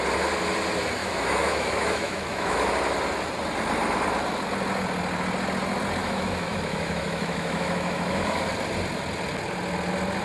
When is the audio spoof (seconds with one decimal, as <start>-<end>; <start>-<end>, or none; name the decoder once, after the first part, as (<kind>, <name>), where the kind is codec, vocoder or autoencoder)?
1.0-2.7 (autoencoder, DAC-VAE); 6.0-8.5